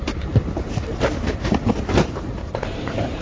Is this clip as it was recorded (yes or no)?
no